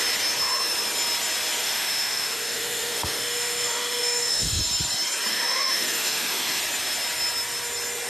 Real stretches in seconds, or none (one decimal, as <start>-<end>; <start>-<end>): 0.0-1.6; 4.6-5.3; 6.6-8.1